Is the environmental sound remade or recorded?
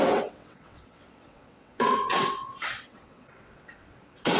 remade